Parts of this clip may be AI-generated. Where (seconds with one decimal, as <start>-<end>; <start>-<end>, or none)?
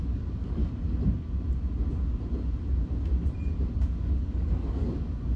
0.0-0.6; 3.8-5.4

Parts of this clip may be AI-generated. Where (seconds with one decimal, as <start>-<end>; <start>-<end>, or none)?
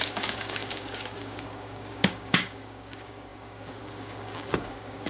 0.0-5.1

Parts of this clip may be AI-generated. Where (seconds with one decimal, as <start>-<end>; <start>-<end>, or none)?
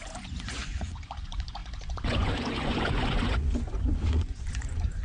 0.0-5.0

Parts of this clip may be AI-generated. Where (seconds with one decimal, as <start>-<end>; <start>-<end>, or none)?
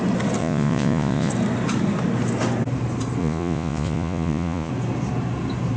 0.4-1.3; 3.2-4.7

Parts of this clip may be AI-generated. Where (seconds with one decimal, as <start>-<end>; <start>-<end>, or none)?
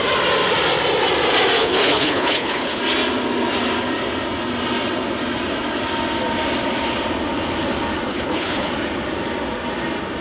1.6-2.8; 8.1-8.7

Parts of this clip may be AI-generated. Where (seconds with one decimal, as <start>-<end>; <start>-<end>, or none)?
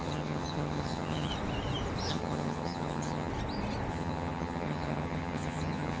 0.0-1.3; 2.1-3.3; 3.9-6.0